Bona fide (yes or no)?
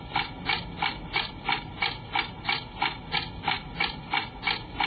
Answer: yes